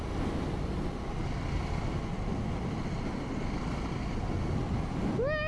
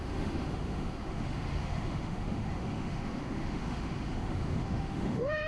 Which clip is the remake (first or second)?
second